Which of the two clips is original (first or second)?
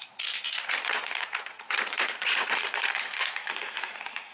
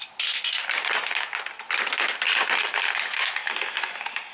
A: second